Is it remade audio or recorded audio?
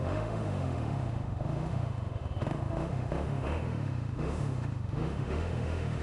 remade